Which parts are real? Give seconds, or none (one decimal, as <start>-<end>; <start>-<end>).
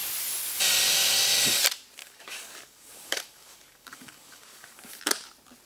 0.0-2.0; 5.0-5.7